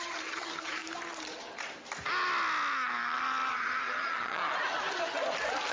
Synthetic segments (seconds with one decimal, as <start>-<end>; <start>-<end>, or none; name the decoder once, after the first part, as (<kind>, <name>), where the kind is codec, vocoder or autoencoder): 0.0-0.8 (vocoder, HiFi-GAN); 3.5-4.4